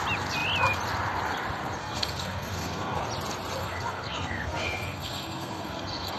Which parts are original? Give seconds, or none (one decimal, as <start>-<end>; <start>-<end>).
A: 0.0-1.8; 3.0-3.6